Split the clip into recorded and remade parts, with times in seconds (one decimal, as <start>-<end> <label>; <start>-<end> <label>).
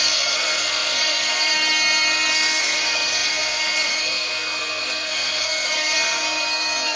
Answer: 0.0-7.0 remade